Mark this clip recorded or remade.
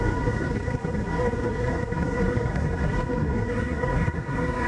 remade